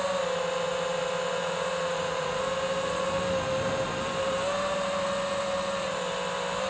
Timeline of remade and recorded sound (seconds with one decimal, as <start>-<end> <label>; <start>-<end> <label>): 0.0-1.4 recorded; 1.4-2.4 remade; 2.4-6.7 recorded